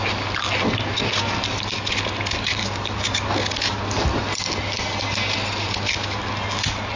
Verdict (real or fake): real